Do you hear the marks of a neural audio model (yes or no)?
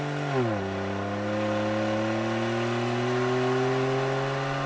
no